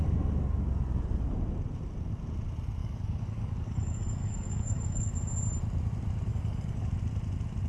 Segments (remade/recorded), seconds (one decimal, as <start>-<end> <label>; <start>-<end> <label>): 0.0-2.8 recorded; 2.8-5.1 remade; 5.1-6.3 recorded; 6.3-6.9 remade; 6.9-7.7 recorded